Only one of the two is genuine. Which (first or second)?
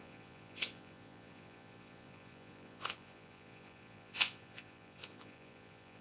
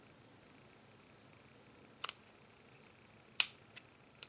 second